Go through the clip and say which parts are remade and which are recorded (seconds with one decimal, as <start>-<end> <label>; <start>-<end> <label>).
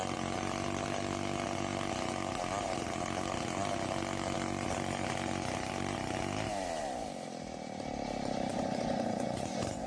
0.0-8.5 recorded; 8.5-9.9 remade